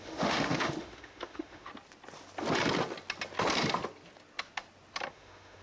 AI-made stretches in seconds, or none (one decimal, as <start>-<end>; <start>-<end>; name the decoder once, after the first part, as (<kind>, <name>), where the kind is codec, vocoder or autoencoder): 0.0-1.7 (autoencoder, DAC-VAE); 5.1-5.6